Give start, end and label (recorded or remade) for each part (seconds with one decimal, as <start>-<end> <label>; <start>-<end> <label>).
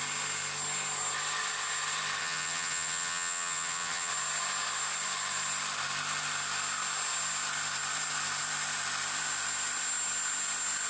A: 0.0-2.2 recorded; 2.2-4.1 remade; 4.1-10.9 recorded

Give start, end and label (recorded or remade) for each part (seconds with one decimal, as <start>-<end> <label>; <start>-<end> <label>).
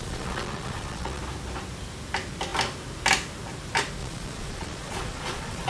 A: 0.0-1.2 remade; 1.2-4.0 recorded; 4.0-5.7 remade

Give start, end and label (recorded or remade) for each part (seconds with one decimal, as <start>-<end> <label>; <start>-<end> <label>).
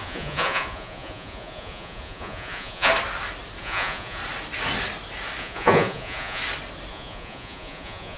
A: 0.0-2.9 remade; 2.9-3.6 recorded; 3.6-4.2 remade; 4.2-5.4 recorded; 5.4-6.4 remade; 6.4-6.9 recorded; 6.9-8.2 remade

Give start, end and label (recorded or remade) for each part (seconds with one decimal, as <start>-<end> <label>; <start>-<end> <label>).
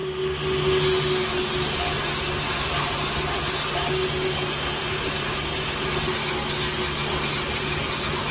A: 0.0-8.3 recorded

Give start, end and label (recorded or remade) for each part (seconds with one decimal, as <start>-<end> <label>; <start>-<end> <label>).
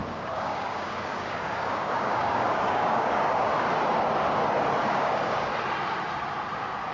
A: 0.0-3.5 remade; 3.5-4.8 recorded; 4.8-5.5 remade; 5.5-6.5 recorded; 6.5-6.9 remade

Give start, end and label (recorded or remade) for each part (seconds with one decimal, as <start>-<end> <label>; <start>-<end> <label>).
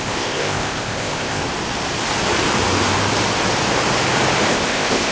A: 0.0-1.4 remade; 1.4-4.5 recorded; 4.5-5.1 remade